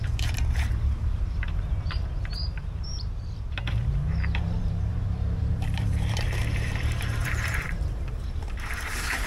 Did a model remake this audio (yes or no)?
yes